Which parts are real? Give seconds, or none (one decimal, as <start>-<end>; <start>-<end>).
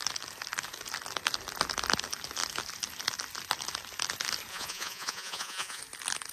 0.0-4.5; 5.8-6.3